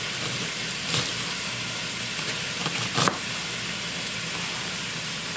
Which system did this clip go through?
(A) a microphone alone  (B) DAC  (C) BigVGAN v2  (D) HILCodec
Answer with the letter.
A